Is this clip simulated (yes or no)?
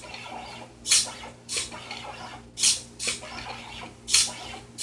no